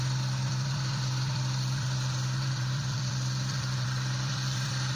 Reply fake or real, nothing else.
fake